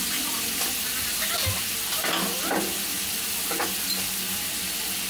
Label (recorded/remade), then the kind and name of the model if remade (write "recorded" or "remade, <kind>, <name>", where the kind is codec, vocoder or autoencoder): recorded